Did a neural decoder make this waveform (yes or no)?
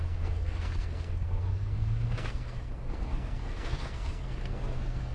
yes